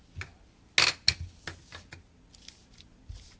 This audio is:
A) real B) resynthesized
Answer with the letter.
A